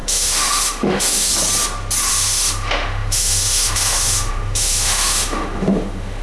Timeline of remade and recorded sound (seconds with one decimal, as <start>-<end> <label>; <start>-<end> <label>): 0.0-1.3 remade; 1.3-2.1 recorded; 2.1-6.2 remade